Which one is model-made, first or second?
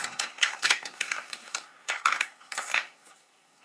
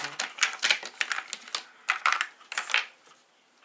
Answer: first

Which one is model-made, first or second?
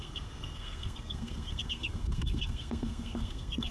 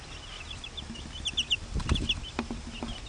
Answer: first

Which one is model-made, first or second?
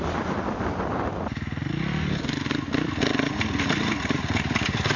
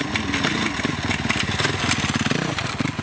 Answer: first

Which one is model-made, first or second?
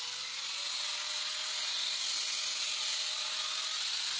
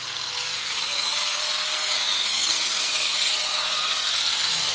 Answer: second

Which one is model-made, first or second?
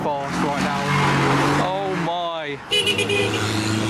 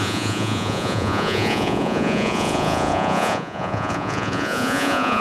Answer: second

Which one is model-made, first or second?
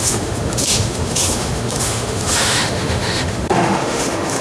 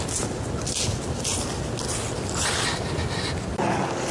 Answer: first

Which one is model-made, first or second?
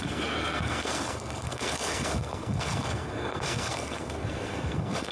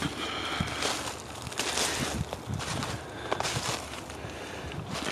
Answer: first